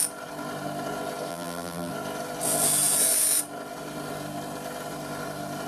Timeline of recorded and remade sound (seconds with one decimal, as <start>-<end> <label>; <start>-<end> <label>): 0.0-1.3 recorded; 1.3-1.9 remade; 1.9-5.7 recorded